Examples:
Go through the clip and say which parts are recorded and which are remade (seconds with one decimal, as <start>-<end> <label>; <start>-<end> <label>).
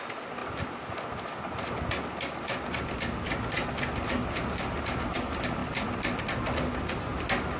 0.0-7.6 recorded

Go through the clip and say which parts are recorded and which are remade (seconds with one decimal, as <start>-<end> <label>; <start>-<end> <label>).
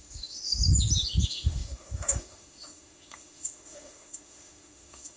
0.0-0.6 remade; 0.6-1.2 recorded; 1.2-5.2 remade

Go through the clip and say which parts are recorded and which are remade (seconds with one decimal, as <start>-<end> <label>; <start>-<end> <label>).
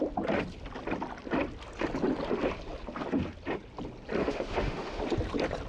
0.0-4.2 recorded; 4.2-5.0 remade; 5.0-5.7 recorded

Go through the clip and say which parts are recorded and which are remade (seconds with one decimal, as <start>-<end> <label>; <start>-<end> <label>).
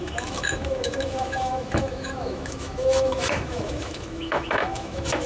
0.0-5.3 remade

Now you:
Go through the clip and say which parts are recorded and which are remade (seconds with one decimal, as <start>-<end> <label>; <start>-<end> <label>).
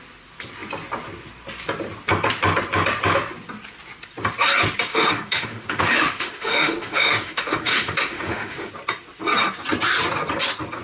0.0-4.9 recorded; 4.9-8.7 remade; 8.7-10.8 recorded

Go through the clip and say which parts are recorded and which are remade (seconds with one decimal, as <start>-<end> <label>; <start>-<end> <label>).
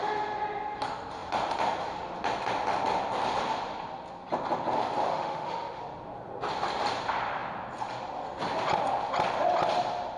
0.0-5.1 recorded; 5.1-5.8 remade; 5.8-10.2 recorded